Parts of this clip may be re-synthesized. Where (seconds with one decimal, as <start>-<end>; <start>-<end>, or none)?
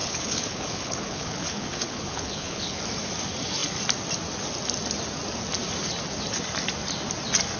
0.0-2.8